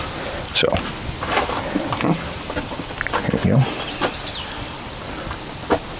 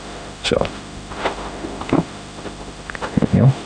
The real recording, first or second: first